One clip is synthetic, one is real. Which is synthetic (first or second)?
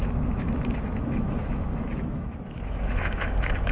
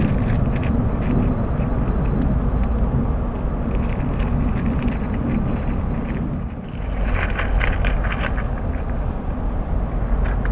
first